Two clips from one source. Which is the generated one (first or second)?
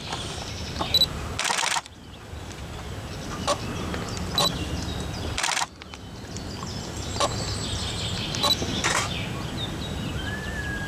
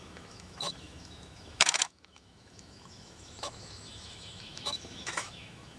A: second